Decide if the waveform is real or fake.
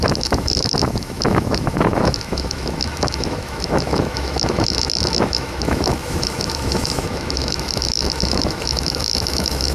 fake